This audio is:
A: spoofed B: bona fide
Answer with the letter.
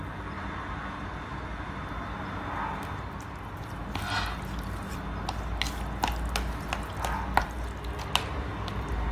B